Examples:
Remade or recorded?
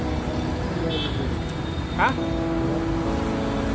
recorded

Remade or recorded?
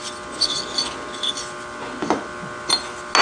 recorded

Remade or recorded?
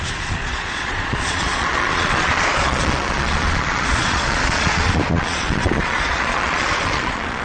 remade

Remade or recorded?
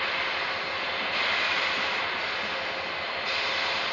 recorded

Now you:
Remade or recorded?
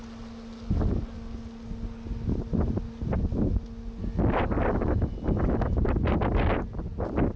recorded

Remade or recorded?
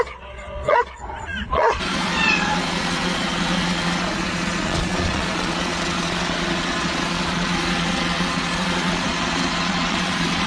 remade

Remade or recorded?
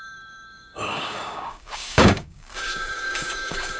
remade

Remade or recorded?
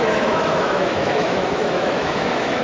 remade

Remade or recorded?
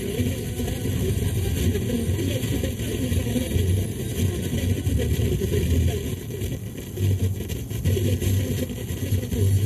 recorded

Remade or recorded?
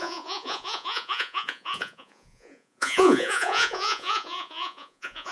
remade